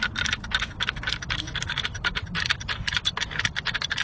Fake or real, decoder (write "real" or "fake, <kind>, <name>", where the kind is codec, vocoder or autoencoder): fake, vocoder, BigVGAN v2